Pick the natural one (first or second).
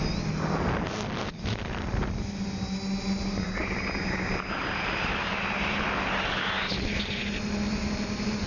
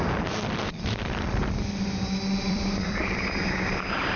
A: first